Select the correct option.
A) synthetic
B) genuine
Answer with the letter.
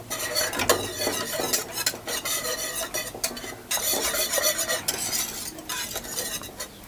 B